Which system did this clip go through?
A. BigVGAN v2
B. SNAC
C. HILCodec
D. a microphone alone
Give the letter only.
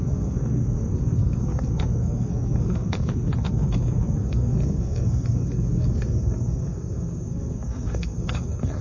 B